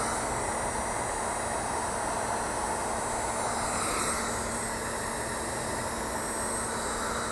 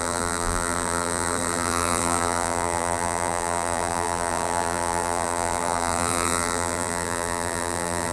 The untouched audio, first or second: first